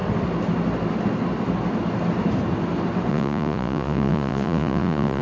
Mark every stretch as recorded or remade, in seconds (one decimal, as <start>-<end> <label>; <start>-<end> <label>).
0.0-3.1 recorded; 3.1-5.2 remade